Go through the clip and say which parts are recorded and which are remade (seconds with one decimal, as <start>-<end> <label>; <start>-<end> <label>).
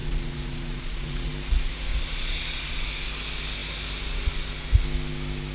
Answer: 0.0-1.3 remade; 1.3-1.9 recorded; 1.9-2.8 remade; 2.8-5.5 recorded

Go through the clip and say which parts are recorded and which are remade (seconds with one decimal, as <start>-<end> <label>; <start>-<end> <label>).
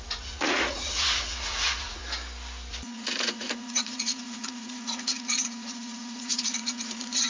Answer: 0.0-2.0 remade; 2.0-2.7 recorded; 2.7-7.3 remade